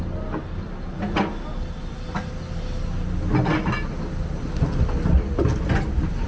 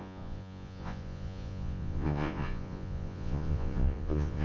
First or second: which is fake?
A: second